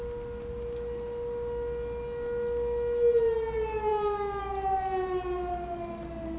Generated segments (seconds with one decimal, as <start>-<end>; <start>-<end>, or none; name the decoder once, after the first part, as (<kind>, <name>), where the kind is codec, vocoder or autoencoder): none

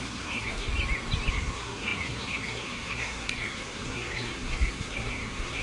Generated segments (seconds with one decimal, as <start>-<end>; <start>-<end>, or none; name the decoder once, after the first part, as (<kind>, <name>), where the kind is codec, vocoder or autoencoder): 0.0-0.7 (codec, SNAC); 1.3-5.6

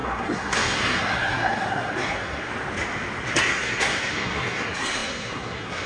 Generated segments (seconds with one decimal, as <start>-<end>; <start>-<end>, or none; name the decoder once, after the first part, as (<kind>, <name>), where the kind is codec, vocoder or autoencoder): 0.0-2.5 (codec, SNAC); 3.4-5.9

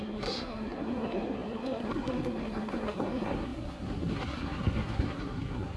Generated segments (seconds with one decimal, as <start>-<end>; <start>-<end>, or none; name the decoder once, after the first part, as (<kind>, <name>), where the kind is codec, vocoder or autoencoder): 0.0-5.8 (codec, SNAC)

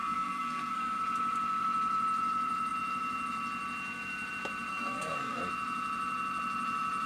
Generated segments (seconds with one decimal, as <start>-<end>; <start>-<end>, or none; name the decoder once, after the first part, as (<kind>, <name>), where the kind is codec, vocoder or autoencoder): 0.0-1.0 (codec, SNAC); 4.7-5.4